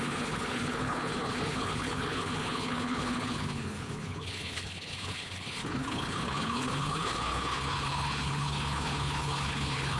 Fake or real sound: fake